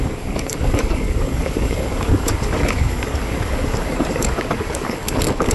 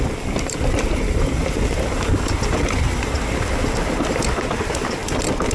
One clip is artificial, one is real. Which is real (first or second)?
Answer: second